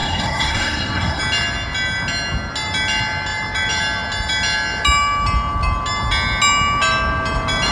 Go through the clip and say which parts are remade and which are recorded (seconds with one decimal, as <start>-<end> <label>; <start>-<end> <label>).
0.0-1.2 remade; 1.2-7.7 recorded